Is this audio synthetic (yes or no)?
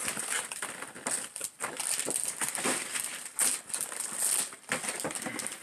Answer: no